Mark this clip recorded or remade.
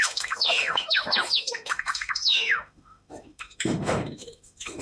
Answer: remade